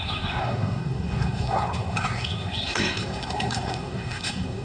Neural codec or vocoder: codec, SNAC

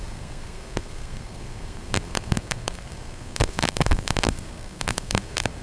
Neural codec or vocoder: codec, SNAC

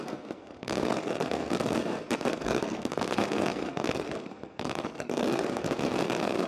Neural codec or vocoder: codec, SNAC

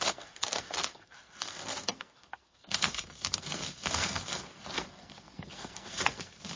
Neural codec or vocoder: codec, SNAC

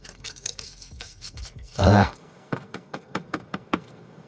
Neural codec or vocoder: codec, SNAC